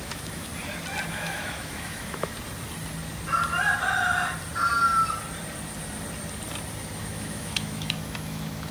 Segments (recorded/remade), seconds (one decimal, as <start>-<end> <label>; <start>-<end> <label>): 0.0-0.5 remade; 0.5-1.1 recorded; 1.1-2.3 remade; 2.3-7.0 recorded; 7.0-8.7 remade